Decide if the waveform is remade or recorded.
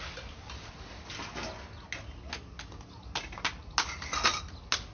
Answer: recorded